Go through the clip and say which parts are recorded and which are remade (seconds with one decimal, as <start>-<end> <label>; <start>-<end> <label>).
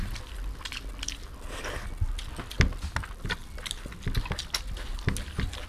0.0-5.7 recorded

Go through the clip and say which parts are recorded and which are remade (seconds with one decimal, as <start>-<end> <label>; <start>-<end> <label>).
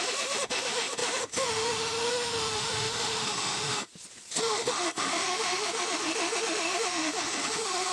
0.0-3.9 remade; 3.9-4.4 recorded; 4.4-7.9 remade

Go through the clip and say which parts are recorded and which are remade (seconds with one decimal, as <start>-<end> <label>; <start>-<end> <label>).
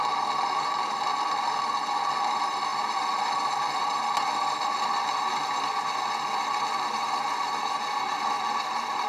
0.0-9.1 recorded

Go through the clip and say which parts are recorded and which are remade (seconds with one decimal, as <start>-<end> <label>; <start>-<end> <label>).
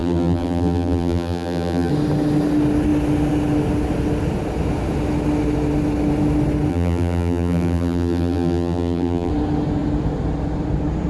0.0-1.9 remade; 1.9-6.7 recorded; 6.7-9.3 remade; 9.3-11.1 recorded